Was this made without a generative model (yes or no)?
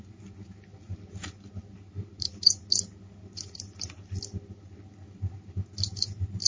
yes